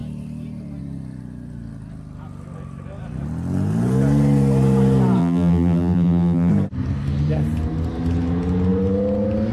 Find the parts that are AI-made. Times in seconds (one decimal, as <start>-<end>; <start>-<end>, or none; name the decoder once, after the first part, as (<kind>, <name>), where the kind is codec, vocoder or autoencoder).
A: 5.2-6.5 (vocoder, BigVGAN v2)